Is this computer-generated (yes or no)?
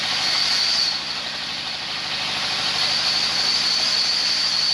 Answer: no